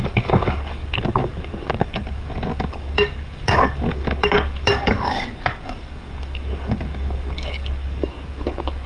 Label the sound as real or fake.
fake